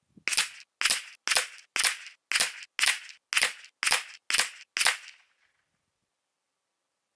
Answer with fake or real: real